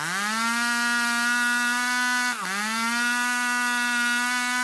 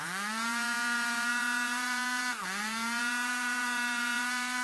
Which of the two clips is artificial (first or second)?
second